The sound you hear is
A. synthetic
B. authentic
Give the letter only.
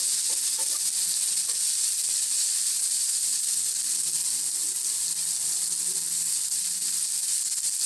B